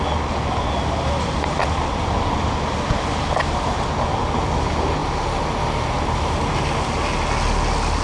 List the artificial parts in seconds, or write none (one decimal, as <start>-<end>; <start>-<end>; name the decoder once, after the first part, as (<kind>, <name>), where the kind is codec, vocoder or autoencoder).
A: none